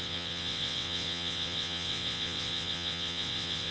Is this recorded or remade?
remade